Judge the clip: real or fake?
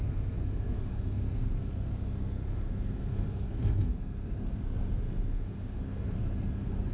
fake